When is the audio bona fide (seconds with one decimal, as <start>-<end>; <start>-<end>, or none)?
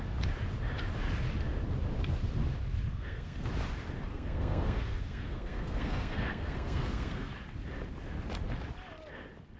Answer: 0.0-2.9; 3.5-4.1; 7.3-9.6